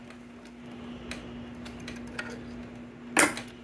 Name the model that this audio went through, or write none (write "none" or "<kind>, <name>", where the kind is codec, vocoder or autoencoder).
none